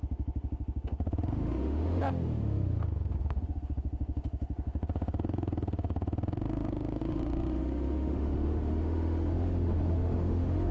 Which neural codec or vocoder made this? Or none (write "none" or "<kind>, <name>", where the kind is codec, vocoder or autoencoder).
autoencoder, DAC-VAE